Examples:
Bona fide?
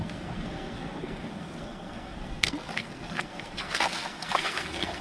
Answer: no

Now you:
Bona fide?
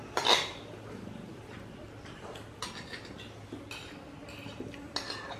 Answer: yes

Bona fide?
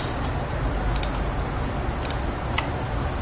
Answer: yes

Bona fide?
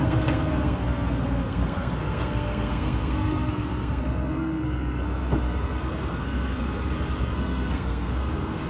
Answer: no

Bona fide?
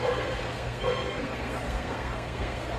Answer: no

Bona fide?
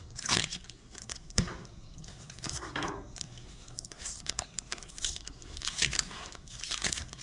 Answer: no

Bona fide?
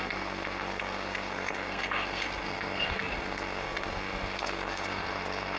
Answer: no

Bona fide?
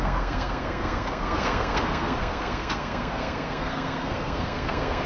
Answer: no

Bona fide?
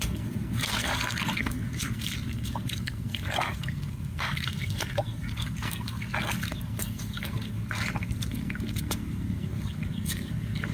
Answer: no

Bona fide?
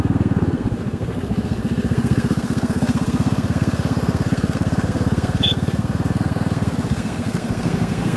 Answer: no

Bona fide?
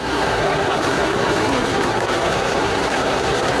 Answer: no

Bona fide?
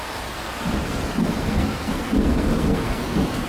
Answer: no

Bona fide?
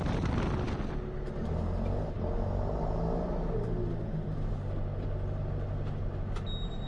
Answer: yes